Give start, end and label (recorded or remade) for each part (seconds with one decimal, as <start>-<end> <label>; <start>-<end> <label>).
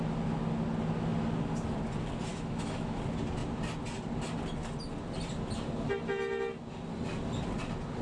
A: 0.0-2.3 recorded; 2.3-3.0 remade; 3.0-8.0 recorded